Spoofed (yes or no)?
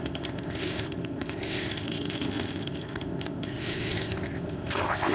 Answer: yes